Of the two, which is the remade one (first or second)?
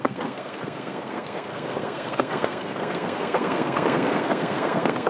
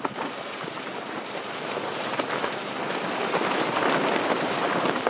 first